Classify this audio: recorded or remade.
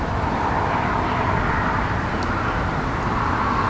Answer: recorded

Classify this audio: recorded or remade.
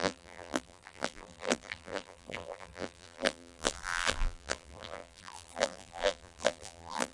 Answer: remade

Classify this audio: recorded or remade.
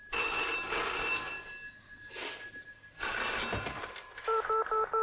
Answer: recorded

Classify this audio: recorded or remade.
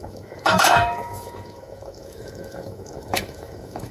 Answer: remade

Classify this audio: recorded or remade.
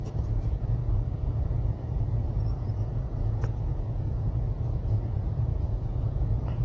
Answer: remade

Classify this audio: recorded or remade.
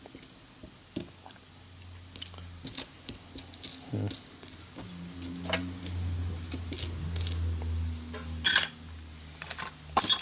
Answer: recorded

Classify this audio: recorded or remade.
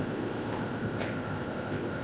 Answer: remade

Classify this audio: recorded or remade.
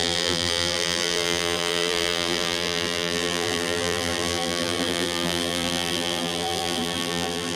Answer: remade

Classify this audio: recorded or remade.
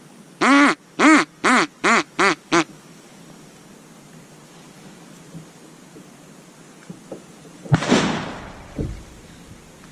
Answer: recorded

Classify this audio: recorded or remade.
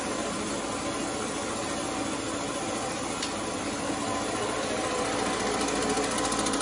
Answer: recorded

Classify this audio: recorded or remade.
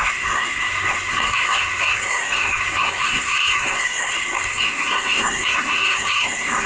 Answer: remade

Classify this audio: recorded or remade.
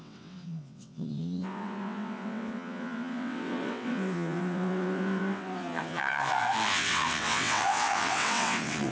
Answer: remade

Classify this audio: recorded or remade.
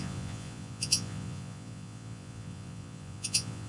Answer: remade